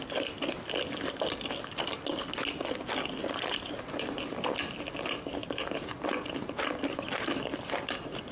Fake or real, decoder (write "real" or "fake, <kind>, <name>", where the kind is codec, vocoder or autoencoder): real